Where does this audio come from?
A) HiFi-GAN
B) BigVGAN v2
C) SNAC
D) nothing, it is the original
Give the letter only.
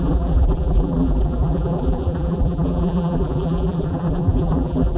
B